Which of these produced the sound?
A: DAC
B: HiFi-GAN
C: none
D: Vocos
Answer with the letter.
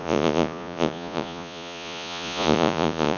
D